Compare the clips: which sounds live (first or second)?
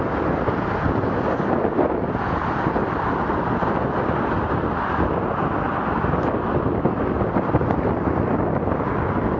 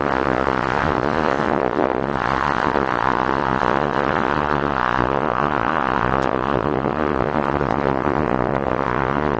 first